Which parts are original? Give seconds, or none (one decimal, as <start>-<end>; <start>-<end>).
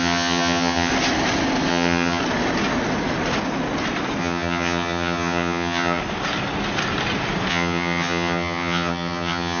0.9-1.7; 2.2-4.2; 6.0-7.5